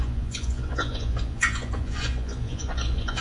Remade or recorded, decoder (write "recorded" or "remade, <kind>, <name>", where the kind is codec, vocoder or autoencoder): remade, vocoder, Vocos